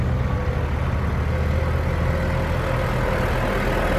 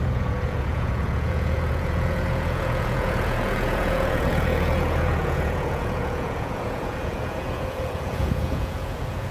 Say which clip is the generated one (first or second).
second